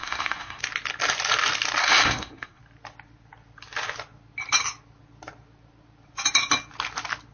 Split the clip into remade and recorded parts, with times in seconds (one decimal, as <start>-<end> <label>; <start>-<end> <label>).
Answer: 0.0-0.6 remade; 0.6-1.8 recorded; 1.8-2.6 remade; 2.6-7.3 recorded